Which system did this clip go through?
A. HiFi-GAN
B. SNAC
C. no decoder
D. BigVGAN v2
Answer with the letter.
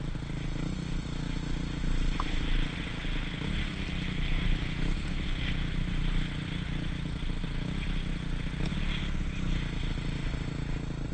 C